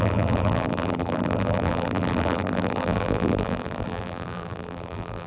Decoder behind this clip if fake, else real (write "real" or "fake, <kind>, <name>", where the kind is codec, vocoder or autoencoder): fake, vocoder, BigVGAN v2